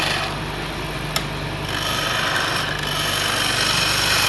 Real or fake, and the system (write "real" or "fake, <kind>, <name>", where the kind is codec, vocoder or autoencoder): real